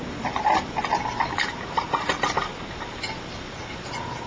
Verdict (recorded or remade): recorded